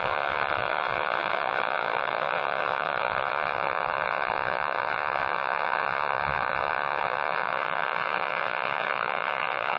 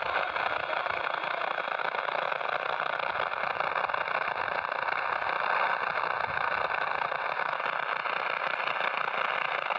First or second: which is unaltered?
second